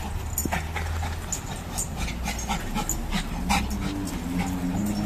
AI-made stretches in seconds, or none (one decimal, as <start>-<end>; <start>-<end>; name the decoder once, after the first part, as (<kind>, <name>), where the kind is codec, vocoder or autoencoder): none